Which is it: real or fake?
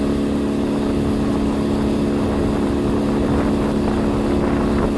real